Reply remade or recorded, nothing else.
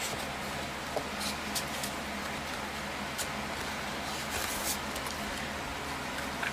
recorded